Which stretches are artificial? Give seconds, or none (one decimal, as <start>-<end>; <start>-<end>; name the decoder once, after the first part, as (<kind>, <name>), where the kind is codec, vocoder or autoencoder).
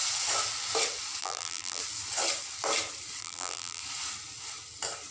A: 1.2-1.8 (vocoder, BigVGAN v2); 3.2-3.8